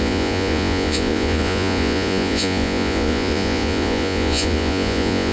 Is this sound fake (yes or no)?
yes